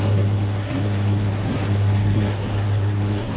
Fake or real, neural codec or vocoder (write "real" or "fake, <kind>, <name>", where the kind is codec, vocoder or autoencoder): fake, codec, SNAC